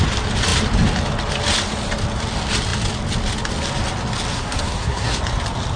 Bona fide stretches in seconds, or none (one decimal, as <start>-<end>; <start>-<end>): 0.0-4.3; 5.2-5.8